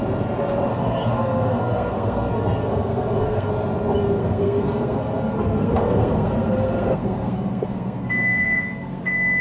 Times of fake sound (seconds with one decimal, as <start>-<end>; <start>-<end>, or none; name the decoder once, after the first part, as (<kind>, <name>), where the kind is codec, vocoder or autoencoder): 0.7-3.5 (codec, SNAC); 4.2-9.0